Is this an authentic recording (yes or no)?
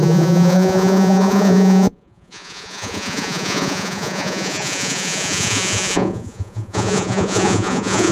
no